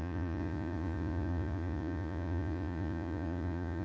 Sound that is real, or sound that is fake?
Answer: fake